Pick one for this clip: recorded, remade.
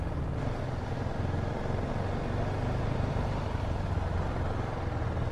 recorded